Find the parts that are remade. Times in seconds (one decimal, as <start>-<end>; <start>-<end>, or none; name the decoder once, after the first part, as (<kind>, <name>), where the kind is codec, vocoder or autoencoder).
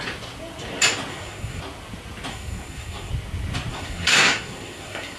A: 1.1-1.6 (codec, SNAC); 2.3-3.1; 3.7-5.2